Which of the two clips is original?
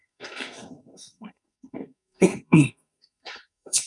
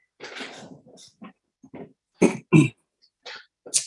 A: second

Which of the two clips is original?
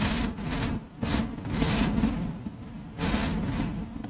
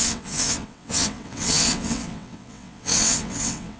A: first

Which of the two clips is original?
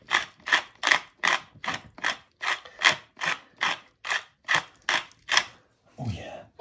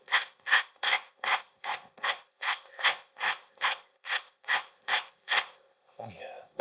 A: first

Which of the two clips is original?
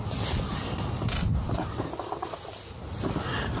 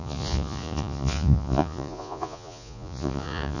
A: first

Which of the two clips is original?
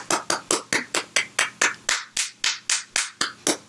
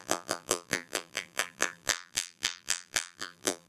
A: first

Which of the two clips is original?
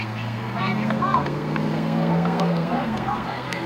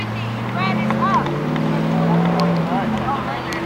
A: second